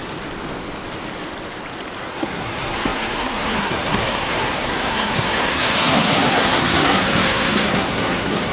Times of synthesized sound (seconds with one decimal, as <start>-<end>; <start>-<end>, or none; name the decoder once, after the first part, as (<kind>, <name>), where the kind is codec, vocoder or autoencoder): 2.1-8.5 (codec, SNAC)